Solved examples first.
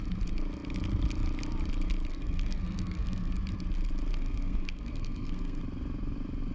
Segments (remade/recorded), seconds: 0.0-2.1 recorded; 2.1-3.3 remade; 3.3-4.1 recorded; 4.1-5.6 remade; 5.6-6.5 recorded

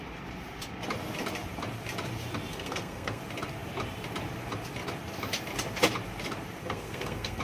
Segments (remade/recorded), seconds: 0.0-2.5 recorded; 2.5-3.2 remade; 3.2-6.6 recorded; 6.6-7.4 remade

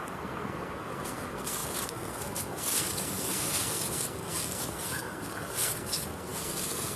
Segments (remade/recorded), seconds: 0.0-7.0 remade

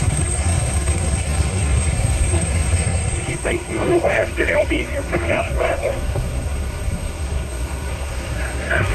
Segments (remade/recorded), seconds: 0.0-8.9 remade

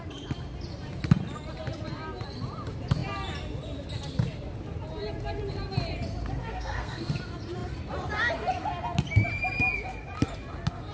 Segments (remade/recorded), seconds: 0.0-6.4 recorded; 6.4-7.1 remade; 7.1-10.9 recorded

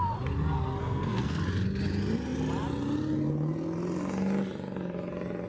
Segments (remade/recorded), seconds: 0.0-0.8 recorded; 0.8-1.4 remade; 1.4-5.5 recorded

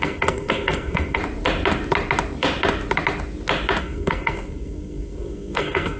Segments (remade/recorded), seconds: 0.0-1.2 remade; 1.2-3.8 recorded; 3.8-6.0 remade